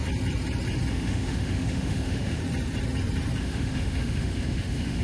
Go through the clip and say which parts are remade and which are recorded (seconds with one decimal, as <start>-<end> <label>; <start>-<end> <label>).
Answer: 0.0-0.9 recorded; 0.9-2.4 remade; 2.4-3.4 recorded; 3.4-5.0 remade